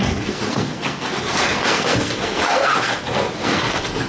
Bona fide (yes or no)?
no